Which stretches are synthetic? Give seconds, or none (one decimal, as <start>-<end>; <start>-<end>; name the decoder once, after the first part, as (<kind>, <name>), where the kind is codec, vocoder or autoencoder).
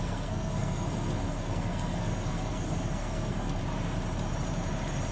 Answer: 0.0-3.6 (codec, SNAC)